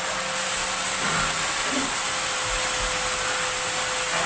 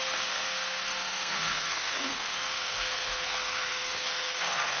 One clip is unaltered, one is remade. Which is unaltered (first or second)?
first